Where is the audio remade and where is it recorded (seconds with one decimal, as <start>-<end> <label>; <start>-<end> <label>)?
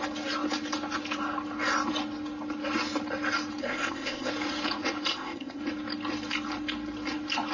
0.0-3.6 recorded; 3.6-4.3 remade; 4.3-5.1 recorded; 5.1-5.6 remade; 5.6-7.5 recorded